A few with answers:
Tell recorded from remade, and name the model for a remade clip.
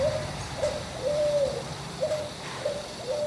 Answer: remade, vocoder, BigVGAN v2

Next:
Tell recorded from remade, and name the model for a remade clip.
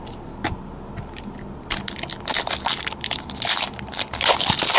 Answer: recorded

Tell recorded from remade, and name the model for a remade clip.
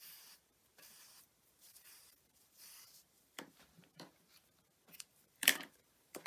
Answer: remade, vocoder, BigVGAN v2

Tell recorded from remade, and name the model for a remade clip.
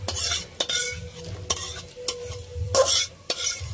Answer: recorded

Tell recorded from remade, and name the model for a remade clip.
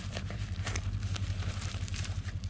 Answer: remade, vocoder, BigVGAN v2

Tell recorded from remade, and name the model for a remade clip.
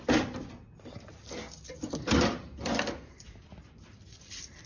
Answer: remade, vocoder, BigVGAN v2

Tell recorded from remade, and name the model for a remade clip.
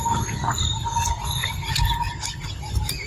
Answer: recorded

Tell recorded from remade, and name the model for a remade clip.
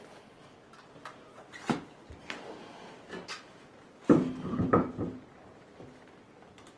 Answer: recorded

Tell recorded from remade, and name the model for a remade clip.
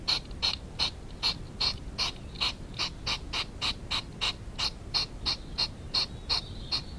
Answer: recorded